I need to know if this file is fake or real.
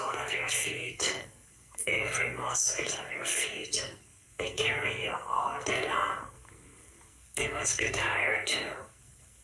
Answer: fake